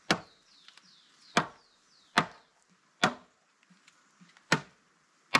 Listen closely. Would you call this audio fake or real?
real